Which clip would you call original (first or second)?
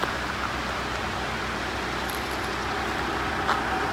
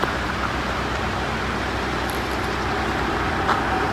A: first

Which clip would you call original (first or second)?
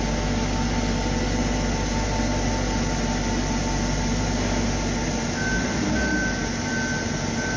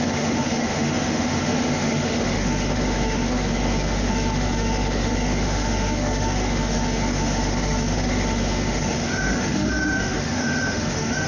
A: first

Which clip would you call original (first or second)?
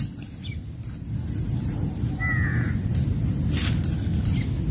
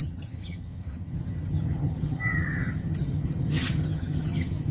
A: first